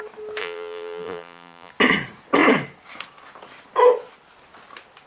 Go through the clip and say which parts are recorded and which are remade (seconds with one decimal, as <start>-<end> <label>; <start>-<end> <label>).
0.0-0.4 recorded; 0.4-1.7 remade; 1.7-5.1 recorded